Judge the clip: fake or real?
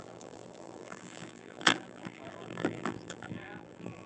fake